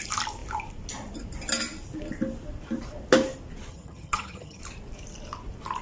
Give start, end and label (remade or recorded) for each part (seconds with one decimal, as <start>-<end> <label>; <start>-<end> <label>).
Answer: 0.0-3.7 recorded; 3.7-4.6 remade; 4.6-5.8 recorded